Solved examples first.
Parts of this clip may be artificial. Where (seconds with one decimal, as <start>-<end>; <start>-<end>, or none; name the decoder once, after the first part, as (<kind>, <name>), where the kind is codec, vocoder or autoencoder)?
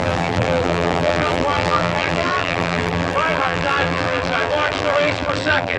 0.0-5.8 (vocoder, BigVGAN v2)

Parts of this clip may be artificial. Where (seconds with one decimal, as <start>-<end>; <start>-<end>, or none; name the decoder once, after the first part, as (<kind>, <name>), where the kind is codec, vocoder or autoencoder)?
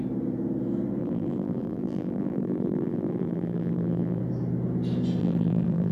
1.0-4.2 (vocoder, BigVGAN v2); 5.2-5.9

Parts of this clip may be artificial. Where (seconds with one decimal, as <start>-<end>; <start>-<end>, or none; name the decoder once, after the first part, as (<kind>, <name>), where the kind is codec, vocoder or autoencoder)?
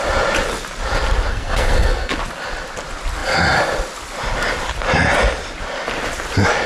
1.3-2.2 (codec, SNAC)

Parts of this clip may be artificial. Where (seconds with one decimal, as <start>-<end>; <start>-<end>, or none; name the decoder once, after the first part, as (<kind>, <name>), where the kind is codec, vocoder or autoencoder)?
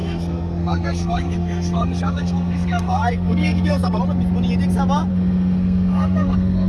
0.0-4.0 (codec, SNAC); 5.1-6.7